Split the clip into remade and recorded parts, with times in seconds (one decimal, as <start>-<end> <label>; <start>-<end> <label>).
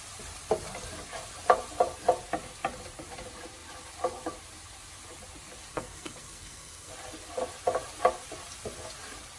0.0-5.7 recorded; 5.7-6.9 remade; 6.9-9.4 recorded